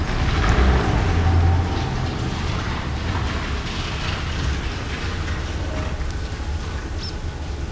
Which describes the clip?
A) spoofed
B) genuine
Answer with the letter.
B